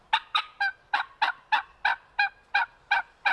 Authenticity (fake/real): real